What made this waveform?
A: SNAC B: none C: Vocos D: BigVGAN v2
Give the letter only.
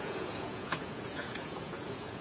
C